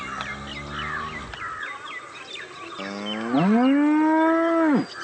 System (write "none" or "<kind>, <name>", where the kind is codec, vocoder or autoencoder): none